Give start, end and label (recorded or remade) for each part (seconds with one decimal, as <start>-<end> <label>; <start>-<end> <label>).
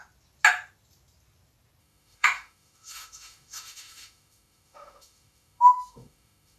0.0-1.8 recorded; 1.8-6.6 remade